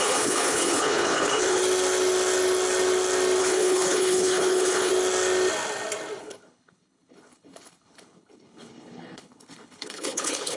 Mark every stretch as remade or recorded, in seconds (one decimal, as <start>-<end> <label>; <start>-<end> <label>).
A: 0.0-1.6 remade; 1.6-3.4 recorded; 3.4-4.9 remade; 4.9-6.2 recorded; 6.2-10.6 remade